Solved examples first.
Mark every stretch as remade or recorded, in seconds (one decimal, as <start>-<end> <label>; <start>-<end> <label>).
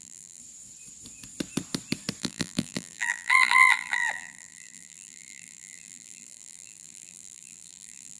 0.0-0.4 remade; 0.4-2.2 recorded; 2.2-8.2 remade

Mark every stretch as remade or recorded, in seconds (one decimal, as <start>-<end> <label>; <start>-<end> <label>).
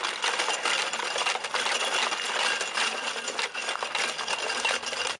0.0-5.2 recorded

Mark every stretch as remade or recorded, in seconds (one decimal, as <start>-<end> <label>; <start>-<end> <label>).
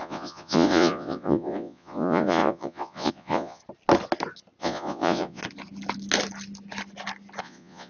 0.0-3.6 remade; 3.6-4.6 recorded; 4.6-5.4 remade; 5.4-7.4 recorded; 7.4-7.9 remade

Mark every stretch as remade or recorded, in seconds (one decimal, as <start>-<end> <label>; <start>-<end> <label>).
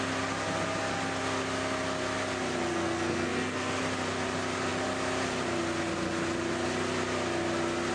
0.0-2.7 recorded; 2.7-3.8 remade; 3.8-7.9 recorded